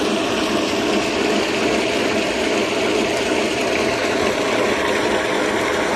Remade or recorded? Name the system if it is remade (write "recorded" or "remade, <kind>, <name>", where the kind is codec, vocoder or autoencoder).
recorded